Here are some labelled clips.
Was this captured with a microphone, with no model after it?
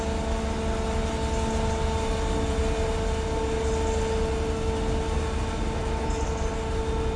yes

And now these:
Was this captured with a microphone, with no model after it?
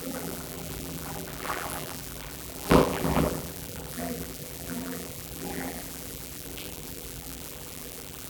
no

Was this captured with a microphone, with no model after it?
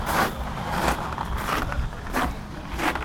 no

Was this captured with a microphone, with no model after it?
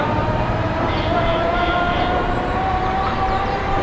no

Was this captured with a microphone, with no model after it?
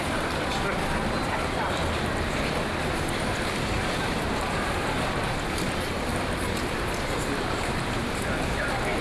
no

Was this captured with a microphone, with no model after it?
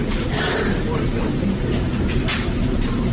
no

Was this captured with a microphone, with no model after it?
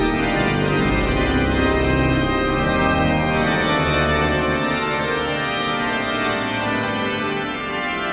yes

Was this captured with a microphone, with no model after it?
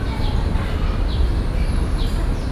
yes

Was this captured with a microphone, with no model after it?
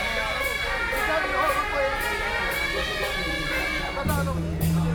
yes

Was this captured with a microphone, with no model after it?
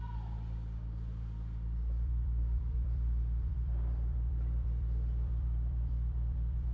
no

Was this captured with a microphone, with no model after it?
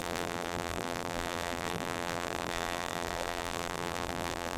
no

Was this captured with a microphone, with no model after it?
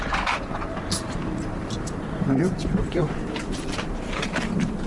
no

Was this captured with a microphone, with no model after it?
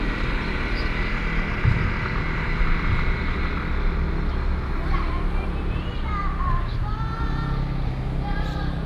yes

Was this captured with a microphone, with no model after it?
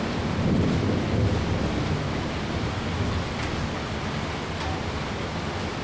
yes